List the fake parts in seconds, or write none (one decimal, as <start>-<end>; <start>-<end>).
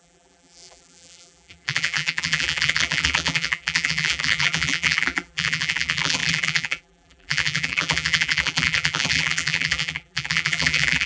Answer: 0.0-11.1